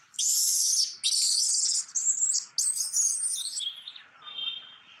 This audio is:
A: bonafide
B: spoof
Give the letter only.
A